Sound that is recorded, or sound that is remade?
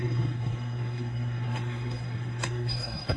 remade